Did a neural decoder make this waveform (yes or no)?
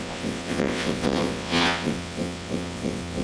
yes